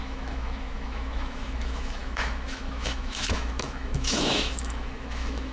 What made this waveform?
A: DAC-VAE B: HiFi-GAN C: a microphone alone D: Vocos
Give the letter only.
A